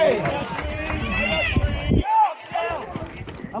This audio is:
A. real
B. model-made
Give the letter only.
B